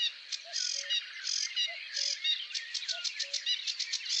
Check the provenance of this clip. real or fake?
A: real